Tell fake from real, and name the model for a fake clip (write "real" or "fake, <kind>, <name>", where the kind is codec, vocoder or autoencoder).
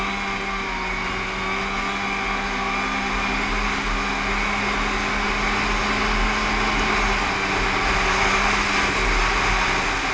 real